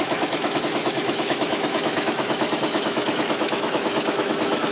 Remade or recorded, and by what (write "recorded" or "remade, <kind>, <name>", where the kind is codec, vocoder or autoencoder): remade, autoencoder, DAC-VAE